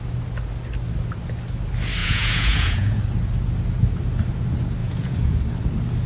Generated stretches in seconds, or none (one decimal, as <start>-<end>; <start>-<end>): 2.0-3.0; 4.8-5.4